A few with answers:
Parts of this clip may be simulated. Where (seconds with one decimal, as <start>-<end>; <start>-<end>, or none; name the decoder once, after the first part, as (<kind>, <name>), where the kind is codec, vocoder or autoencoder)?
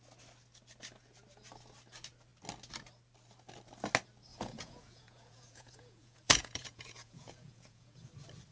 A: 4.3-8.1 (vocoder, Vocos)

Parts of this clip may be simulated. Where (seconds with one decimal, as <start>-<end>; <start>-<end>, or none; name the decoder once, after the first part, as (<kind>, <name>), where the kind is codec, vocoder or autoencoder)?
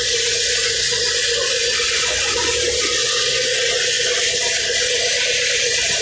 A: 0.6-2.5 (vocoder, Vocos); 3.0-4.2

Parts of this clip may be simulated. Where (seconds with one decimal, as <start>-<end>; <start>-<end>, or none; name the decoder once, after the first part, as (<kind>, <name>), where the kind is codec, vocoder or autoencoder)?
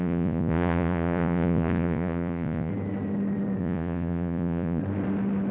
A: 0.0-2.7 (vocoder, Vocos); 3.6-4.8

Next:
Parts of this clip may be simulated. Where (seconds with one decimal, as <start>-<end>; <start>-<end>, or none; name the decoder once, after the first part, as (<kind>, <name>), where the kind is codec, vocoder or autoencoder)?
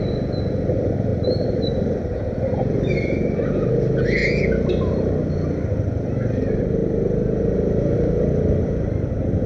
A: none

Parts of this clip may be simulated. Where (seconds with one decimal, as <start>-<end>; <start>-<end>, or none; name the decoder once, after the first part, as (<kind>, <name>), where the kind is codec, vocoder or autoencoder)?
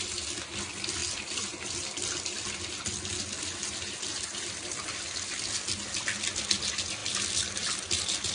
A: none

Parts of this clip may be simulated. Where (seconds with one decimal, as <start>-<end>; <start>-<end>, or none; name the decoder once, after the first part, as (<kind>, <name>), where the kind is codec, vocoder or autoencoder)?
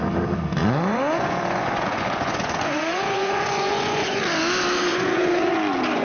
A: 0.6-4.2 (vocoder, Vocos); 4.9-5.5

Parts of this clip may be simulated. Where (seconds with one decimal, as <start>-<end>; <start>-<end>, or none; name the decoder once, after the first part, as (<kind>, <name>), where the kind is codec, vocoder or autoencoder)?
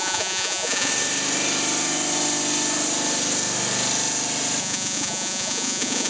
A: 0.0-0.9 (vocoder, Vocos); 4.6-6.1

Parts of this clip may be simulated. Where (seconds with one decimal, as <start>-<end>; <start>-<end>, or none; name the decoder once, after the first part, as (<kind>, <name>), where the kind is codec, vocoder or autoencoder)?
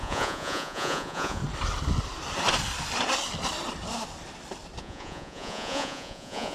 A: 0.0-1.4 (vocoder, Vocos); 4.8-6.5